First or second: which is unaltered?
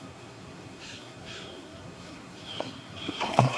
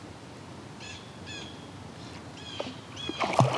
second